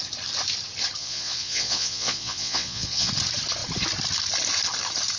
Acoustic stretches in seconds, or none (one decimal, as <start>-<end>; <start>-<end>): 0.0-1.0; 3.1-5.2